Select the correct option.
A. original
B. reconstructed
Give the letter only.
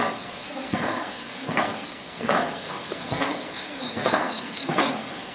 B